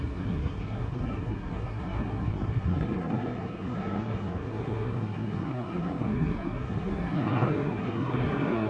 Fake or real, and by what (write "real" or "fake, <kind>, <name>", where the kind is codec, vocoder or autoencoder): fake, codec, SNAC